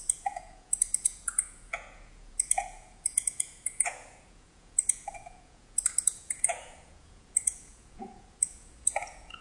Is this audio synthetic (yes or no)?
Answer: yes